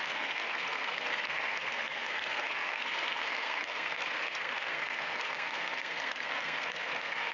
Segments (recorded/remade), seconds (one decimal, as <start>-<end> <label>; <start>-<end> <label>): 0.0-7.3 remade